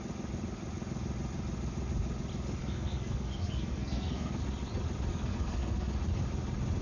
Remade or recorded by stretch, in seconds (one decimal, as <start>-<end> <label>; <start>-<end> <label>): 0.0-2.6 recorded; 2.6-4.4 remade; 4.4-5.1 recorded; 5.1-5.9 remade; 5.9-6.8 recorded